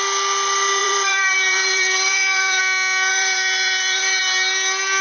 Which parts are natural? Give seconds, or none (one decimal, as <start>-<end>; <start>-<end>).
0.0-0.8; 2.6-3.1; 4.2-5.0